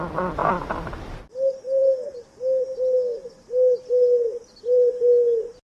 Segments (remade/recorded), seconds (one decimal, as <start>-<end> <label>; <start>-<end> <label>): 0.0-0.4 recorded; 0.4-1.2 remade; 1.2-5.7 recorded